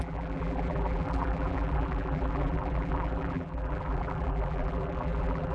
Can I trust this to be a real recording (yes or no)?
no